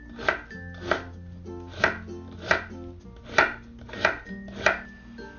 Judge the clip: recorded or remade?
recorded